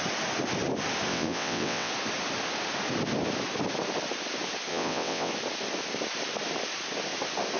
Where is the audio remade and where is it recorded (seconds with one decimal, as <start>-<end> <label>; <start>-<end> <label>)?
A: 0.0-1.1 recorded; 1.1-1.9 remade; 1.9-4.7 recorded; 4.7-5.3 remade; 5.3-7.6 recorded